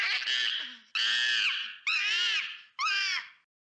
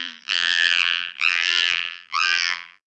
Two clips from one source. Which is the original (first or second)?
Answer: first